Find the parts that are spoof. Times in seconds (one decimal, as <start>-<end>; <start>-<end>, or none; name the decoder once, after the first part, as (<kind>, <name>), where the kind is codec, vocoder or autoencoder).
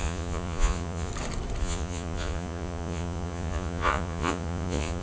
0.0-1.1 (vocoder, Vocos); 1.6-5.0